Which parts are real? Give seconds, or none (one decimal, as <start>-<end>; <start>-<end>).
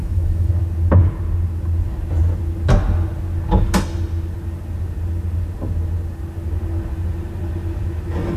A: 0.5-8.4